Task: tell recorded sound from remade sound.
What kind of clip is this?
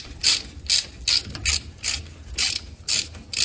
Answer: recorded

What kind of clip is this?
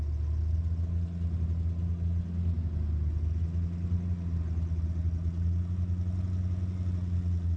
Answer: recorded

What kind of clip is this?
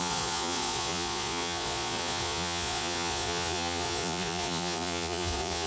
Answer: remade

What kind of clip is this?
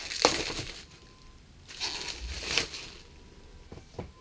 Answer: recorded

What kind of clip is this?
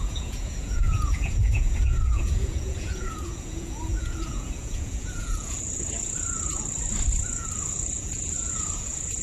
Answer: remade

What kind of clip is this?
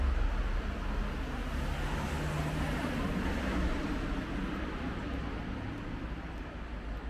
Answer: recorded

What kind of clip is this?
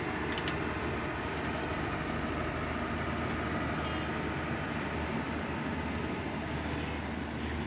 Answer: recorded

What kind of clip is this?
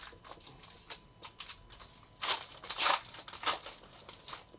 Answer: recorded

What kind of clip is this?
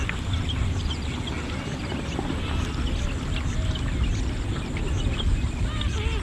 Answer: recorded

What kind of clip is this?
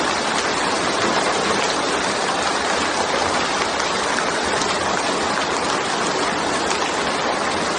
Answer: recorded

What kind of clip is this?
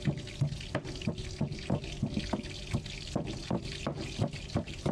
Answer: recorded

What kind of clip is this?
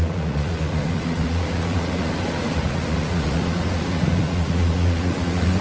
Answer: remade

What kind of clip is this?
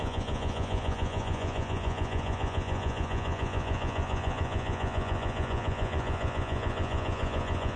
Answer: remade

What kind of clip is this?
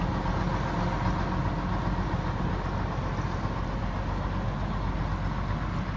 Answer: recorded